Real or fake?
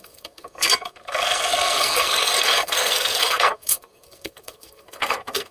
fake